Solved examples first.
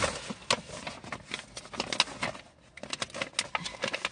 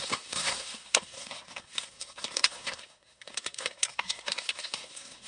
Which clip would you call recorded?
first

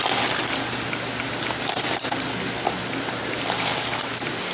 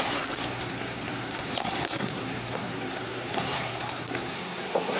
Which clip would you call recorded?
first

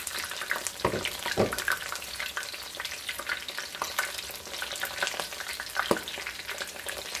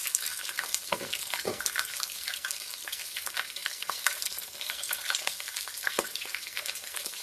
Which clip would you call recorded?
first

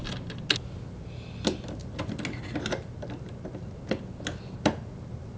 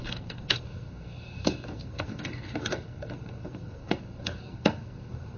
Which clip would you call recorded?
first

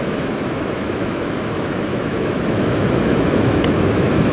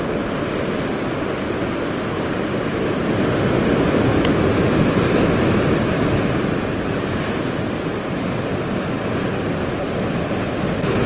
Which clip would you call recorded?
second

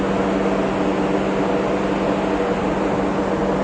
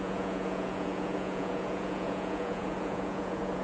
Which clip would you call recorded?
first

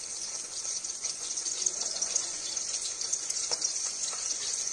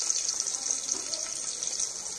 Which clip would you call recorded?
second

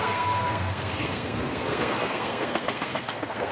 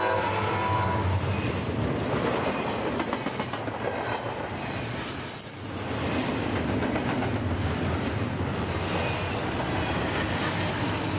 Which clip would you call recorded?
second